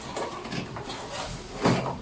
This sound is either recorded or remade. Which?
recorded